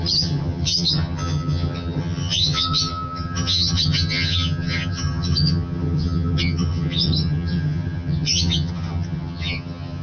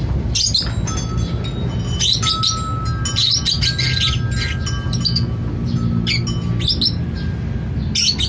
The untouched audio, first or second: second